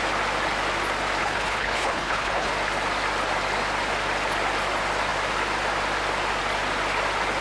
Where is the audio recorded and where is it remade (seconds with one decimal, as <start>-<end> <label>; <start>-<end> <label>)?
0.0-1.2 recorded; 1.2-2.5 remade; 2.5-7.4 recorded